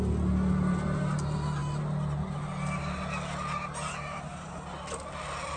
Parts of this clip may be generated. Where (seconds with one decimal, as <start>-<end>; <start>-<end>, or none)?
none

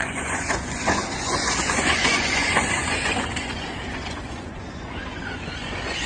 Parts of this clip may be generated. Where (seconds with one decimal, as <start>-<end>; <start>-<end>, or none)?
0.0-6.1

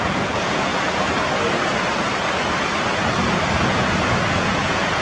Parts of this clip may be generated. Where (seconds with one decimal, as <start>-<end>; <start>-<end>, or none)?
0.0-0.7; 3.7-5.0